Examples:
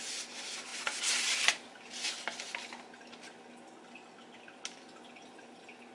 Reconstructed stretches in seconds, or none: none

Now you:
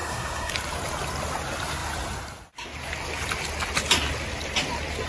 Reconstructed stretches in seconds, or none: 0.0-0.5 (codec, SNAC)

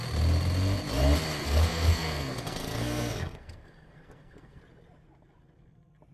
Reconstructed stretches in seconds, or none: 1.4-4.6 (codec, SNAC)